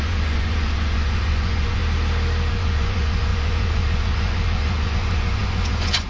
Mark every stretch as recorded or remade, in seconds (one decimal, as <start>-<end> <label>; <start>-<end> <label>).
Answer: 0.0-1.8 remade; 1.8-2.5 recorded; 2.5-6.1 remade